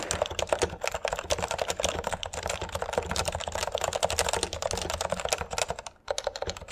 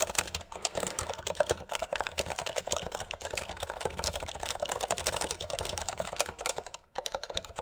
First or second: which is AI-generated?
second